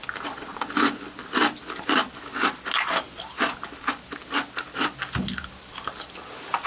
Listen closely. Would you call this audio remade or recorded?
recorded